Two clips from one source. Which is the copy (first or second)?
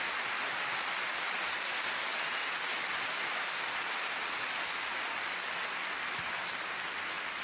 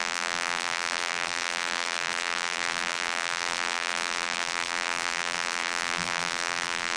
second